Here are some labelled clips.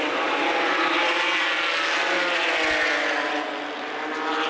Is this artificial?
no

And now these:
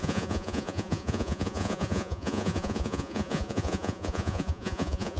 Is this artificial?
yes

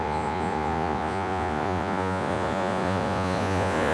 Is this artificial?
yes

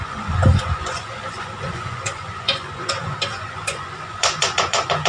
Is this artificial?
yes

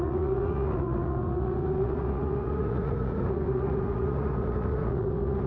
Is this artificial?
yes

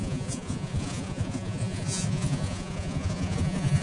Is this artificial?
yes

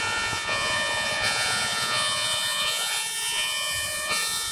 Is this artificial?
yes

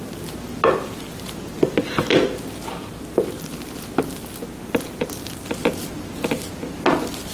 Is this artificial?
no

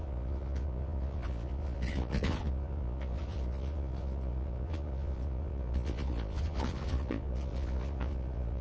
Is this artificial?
yes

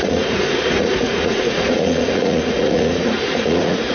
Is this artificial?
yes